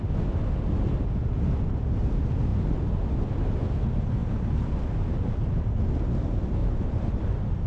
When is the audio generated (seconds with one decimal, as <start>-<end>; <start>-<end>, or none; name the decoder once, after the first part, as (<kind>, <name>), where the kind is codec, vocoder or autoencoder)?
4.2-4.8 (vocoder, BigVGAN v2); 6.6-7.2